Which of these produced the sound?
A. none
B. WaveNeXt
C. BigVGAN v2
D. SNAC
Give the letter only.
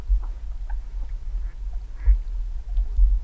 A